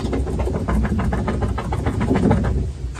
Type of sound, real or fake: real